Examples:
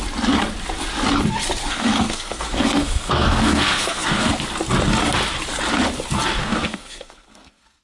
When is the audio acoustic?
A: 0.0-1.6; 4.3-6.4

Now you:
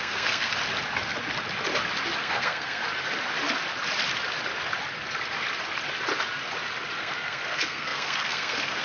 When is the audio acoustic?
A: 0.5-2.2; 2.8-7.0

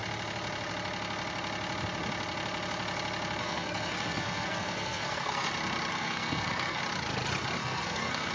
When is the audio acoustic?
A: 0.0-3.4; 5.5-5.9; 6.8-7.6